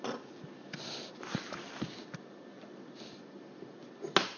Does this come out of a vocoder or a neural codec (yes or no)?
no